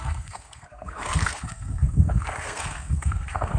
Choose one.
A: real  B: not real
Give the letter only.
B